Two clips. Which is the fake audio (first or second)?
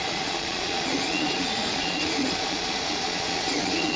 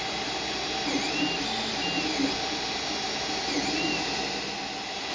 first